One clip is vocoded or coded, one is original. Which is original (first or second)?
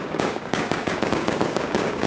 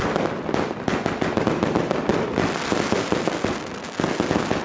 second